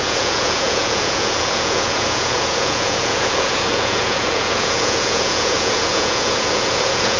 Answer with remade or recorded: remade